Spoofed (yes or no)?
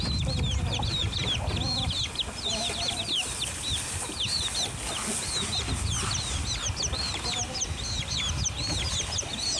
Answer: no